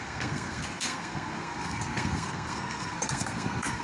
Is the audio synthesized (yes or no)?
yes